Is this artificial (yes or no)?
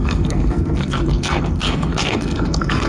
yes